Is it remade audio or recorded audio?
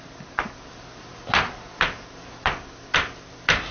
recorded